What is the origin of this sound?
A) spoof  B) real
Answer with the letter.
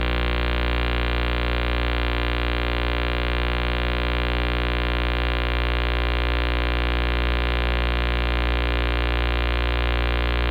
B